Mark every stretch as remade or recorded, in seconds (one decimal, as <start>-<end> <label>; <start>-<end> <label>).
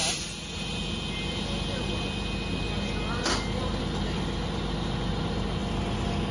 0.0-6.3 recorded